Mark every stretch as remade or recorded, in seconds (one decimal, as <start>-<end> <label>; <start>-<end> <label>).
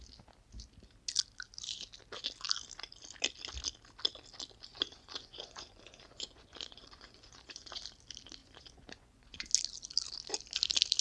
0.0-4.7 recorded; 4.7-7.8 remade; 7.8-8.4 recorded; 8.4-9.5 remade; 9.5-11.0 recorded